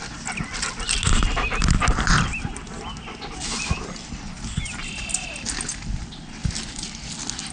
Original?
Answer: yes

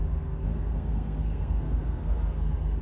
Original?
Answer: no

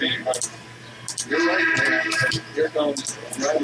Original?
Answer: yes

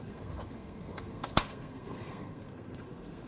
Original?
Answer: no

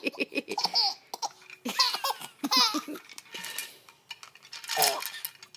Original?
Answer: yes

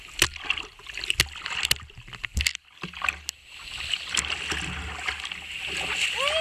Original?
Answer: yes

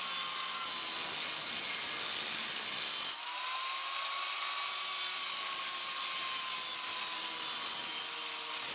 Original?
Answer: yes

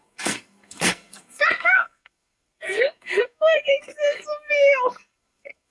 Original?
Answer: no